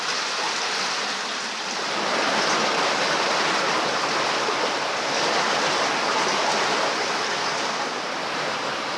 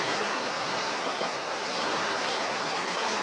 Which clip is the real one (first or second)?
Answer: first